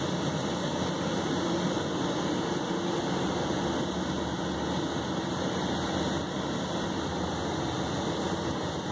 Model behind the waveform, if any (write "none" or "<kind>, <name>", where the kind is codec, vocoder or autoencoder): none